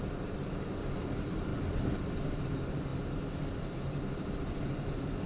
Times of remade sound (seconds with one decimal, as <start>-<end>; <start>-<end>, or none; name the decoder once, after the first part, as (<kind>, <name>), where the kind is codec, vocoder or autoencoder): none